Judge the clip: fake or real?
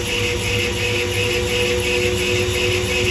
real